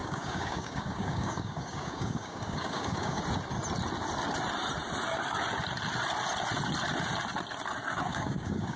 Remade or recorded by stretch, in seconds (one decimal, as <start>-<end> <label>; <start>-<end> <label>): 0.0-3.2 remade; 3.2-8.1 recorded; 8.1-8.8 remade